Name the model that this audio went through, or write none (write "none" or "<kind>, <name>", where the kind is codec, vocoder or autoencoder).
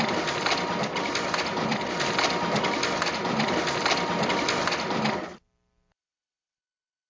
vocoder, BigVGAN v2